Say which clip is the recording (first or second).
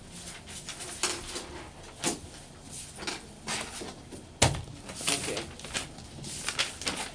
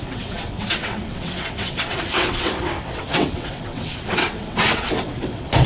first